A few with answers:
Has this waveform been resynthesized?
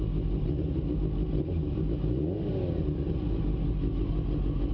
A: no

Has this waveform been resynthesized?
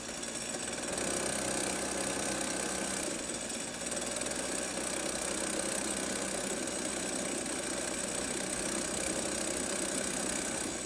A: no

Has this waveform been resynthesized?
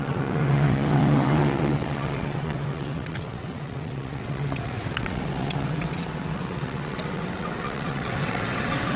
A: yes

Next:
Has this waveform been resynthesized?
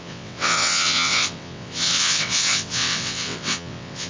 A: yes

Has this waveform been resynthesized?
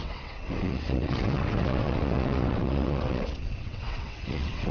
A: yes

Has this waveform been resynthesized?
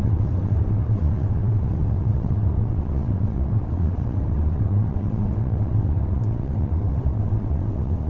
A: yes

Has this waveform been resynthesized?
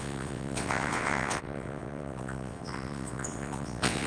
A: yes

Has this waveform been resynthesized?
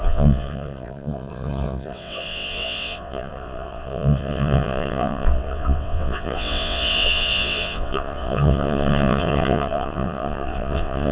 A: yes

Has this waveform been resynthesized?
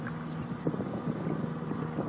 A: no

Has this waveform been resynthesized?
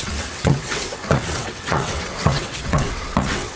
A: yes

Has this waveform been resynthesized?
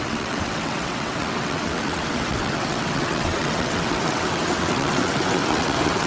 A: yes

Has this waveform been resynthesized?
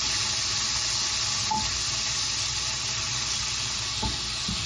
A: no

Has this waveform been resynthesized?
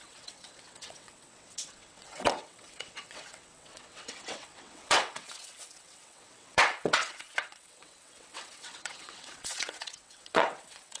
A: yes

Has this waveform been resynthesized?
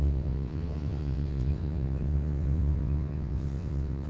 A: yes